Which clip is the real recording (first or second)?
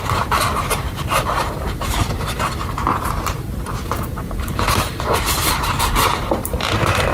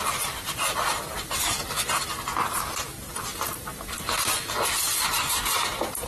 second